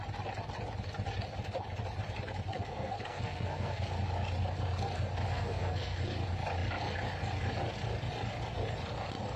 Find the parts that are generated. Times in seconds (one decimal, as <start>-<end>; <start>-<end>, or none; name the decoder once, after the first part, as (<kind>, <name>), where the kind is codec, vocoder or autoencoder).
2.5-3.8 (codec, SNAC); 5.3-6.0